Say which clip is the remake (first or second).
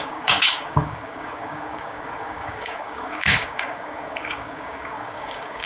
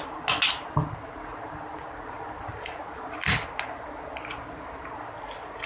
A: first